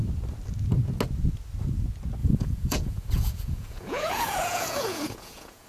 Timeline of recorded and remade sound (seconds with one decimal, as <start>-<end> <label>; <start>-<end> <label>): 0.0-2.2 recorded; 2.2-5.7 remade